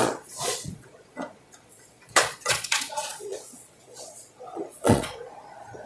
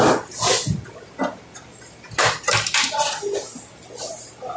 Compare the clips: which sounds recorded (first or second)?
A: second